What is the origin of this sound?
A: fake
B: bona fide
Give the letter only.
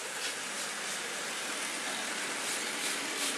B